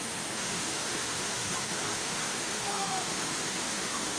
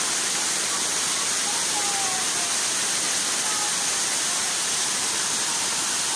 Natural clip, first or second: second